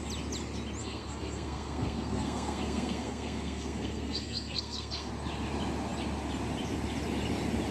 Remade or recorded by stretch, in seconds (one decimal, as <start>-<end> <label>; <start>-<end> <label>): 0.0-0.8 recorded; 0.8-5.1 remade; 5.1-7.7 recorded